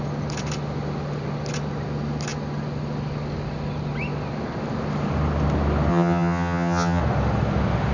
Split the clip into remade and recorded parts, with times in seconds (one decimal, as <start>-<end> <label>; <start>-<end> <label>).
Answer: 0.0-5.9 recorded; 5.9-7.0 remade; 7.0-7.9 recorded